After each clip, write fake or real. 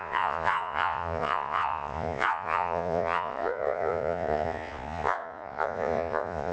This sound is fake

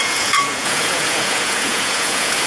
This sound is fake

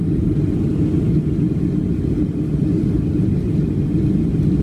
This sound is real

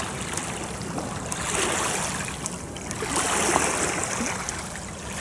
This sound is real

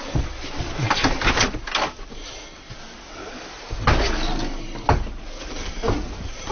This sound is real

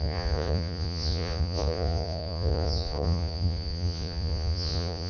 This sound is fake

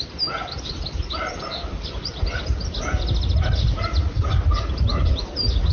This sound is real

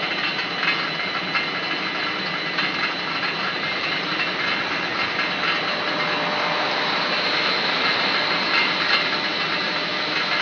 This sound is real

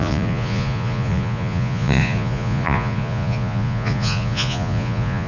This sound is fake